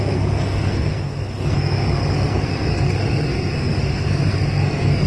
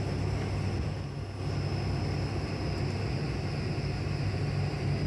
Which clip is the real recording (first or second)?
second